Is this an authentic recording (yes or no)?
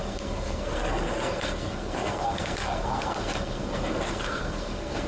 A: no